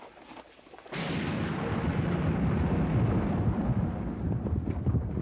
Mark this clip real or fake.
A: real